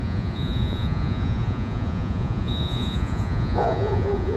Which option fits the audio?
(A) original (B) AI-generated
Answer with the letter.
B